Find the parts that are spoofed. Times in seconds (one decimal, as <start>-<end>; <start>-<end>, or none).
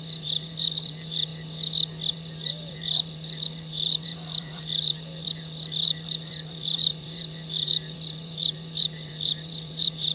0.0-1.3; 2.1-10.1